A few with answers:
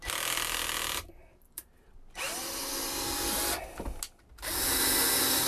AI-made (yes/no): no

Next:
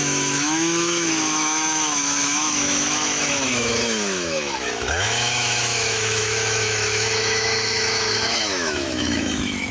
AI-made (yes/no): yes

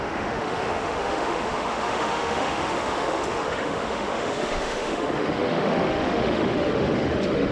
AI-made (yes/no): yes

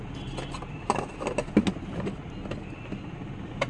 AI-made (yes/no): no